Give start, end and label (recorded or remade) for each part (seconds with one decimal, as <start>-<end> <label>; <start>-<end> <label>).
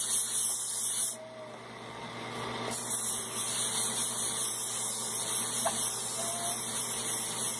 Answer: 0.0-7.6 recorded